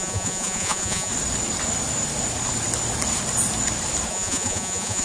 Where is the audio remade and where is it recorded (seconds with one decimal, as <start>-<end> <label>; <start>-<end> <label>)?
0.0-1.1 remade; 1.1-4.1 recorded; 4.1-5.0 remade